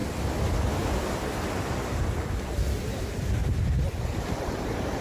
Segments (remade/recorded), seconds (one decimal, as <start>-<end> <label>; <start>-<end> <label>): 0.0-3.0 recorded; 3.0-3.4 remade; 3.4-4.2 recorded; 4.2-5.0 remade